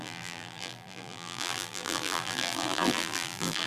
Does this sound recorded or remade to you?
remade